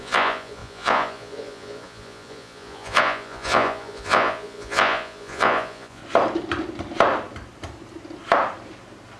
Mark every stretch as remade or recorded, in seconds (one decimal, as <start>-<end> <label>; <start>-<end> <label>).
0.0-6.0 remade; 6.0-9.2 recorded